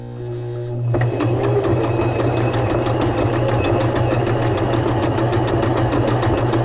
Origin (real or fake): real